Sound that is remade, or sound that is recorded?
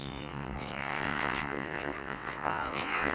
remade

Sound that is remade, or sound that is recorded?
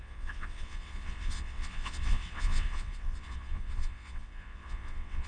remade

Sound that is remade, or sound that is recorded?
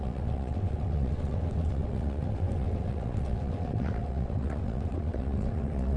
remade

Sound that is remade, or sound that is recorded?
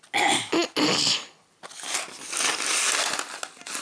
recorded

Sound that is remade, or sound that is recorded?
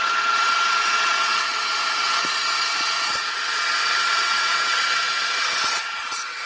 remade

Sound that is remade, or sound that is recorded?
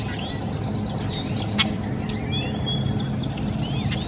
recorded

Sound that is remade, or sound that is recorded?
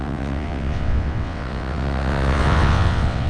remade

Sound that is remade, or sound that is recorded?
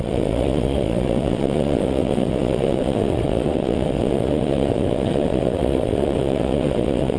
remade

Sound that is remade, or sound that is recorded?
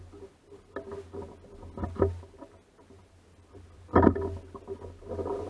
recorded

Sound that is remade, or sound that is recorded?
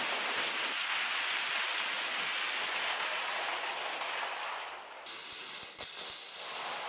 recorded